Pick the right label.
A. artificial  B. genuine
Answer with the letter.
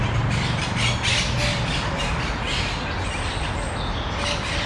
B